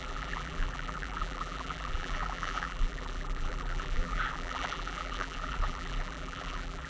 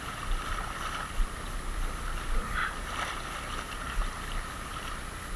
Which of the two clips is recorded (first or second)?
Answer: second